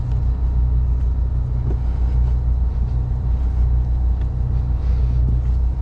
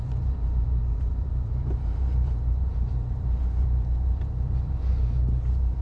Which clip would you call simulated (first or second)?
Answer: second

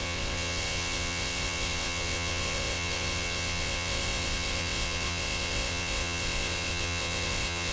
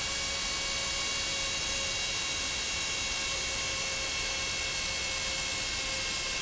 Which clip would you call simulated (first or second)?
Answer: first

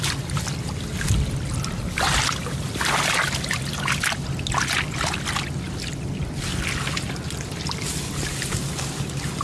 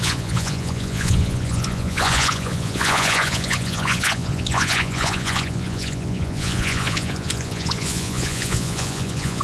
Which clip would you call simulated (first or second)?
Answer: second